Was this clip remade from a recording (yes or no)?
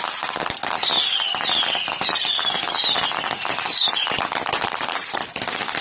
no